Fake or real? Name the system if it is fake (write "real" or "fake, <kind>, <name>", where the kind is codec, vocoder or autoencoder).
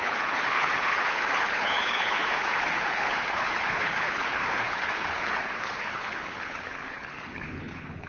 fake, codec, HILCodec